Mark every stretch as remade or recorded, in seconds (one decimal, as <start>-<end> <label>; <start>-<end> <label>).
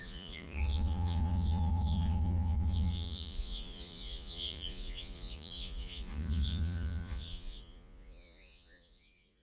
0.0-9.4 remade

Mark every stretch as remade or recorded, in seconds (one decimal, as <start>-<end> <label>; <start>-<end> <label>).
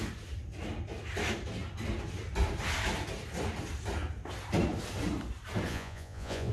0.0-5.7 recorded; 5.7-6.5 remade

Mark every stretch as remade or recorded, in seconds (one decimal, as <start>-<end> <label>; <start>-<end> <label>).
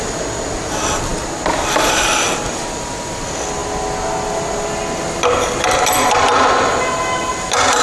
0.0-7.8 recorded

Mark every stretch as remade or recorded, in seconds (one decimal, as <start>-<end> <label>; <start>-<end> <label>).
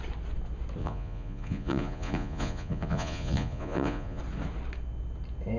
0.0-0.8 recorded; 0.8-4.2 remade; 4.2-5.6 recorded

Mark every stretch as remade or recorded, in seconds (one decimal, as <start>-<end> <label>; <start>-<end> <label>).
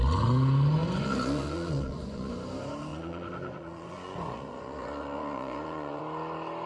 0.0-0.8 recorded; 0.8-2.3 remade; 2.3-2.9 recorded; 2.9-6.0 remade; 6.0-6.7 recorded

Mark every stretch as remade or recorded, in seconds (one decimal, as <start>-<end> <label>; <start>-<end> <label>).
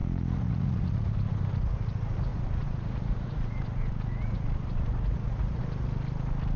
0.0-1.1 remade; 1.1-2.3 recorded; 2.3-5.6 remade; 5.6-6.6 recorded